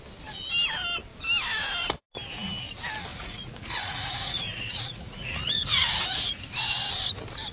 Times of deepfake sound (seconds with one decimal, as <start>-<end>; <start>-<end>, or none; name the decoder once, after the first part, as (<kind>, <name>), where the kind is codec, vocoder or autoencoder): 3.1-6.9 (vocoder, Vocos)